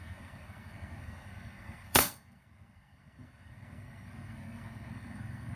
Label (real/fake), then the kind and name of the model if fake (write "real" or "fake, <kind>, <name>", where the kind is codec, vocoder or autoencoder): fake, codec, SNAC